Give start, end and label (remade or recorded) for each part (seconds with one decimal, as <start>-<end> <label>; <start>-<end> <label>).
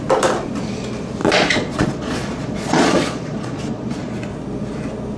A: 0.0-1.2 recorded; 1.2-4.3 remade; 4.3-5.2 recorded